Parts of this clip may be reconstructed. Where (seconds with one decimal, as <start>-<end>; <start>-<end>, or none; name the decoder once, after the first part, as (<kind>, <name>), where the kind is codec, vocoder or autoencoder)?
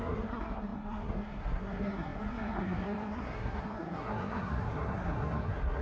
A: 0.0-5.8 (codec, SNAC)